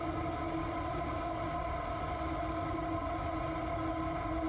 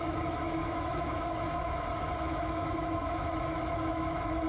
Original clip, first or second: first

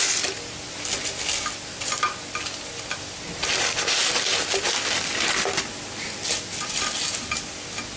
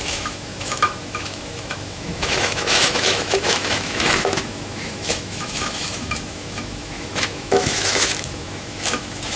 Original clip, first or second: first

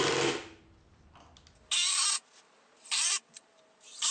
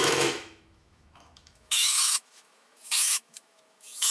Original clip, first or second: first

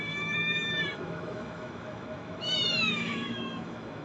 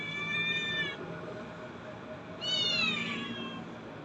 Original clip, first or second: second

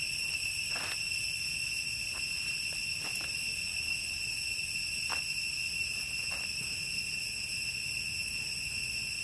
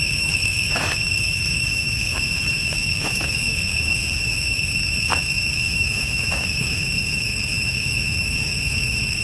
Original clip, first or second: first